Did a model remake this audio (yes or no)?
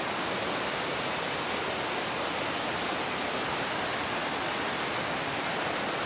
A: no